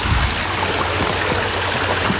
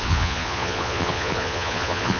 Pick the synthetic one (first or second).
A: second